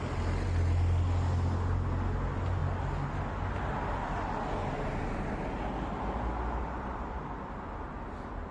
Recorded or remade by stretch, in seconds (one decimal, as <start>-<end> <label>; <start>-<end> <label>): 0.0-8.5 recorded